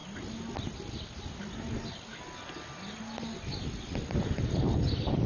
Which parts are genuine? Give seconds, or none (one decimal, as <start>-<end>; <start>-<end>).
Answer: 0.0-5.3